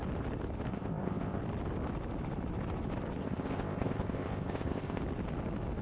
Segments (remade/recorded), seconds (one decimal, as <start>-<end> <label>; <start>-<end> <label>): 0.0-0.7 recorded; 0.7-1.4 remade; 1.4-3.2 recorded; 3.2-5.0 remade; 5.0-5.8 recorded